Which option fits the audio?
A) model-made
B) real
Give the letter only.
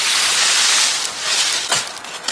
B